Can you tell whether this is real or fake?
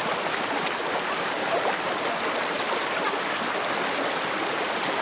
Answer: real